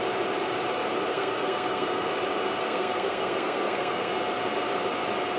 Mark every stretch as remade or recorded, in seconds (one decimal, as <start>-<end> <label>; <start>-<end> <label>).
0.0-1.1 recorded; 1.1-2.1 remade; 2.1-2.6 recorded; 2.6-4.1 remade; 4.1-5.4 recorded